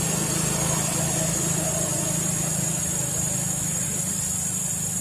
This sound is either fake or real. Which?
real